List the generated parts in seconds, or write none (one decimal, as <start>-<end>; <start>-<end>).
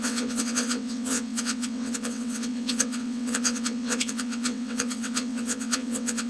0.0-6.3